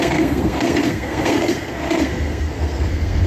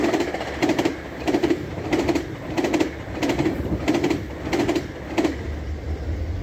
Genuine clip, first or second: second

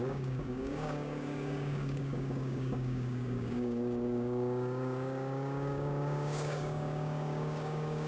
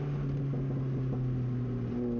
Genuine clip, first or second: second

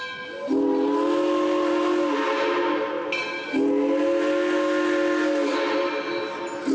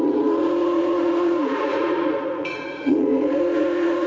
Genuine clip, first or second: first